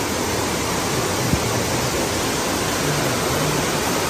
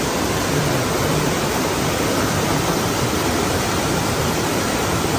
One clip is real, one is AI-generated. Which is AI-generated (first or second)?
second